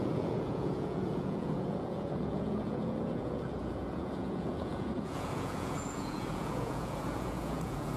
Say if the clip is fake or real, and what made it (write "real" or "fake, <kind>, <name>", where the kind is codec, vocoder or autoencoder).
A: fake, vocoder, Vocos